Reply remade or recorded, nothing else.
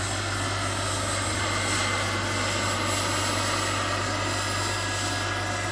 recorded